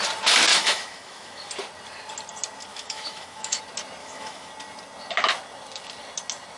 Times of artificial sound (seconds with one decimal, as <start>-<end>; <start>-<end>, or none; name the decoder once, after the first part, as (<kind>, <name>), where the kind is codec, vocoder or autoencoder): 0.5-1.5 (autoencoder, DAC-VAE); 2.7-3.6; 4.0-4.5